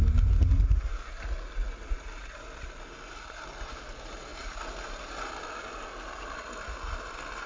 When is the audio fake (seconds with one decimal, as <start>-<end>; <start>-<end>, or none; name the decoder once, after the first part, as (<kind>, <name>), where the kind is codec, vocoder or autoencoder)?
none